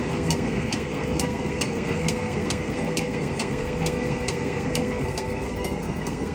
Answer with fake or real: fake